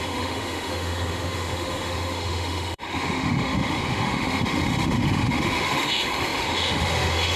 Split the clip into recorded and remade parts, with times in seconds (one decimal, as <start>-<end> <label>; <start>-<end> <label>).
0.0-7.4 remade